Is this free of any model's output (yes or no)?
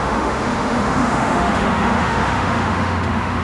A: no